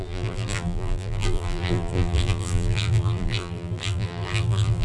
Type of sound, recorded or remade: remade